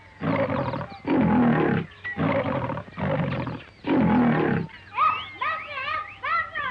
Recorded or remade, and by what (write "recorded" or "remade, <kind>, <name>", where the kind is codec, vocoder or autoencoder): recorded